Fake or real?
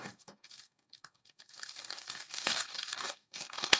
fake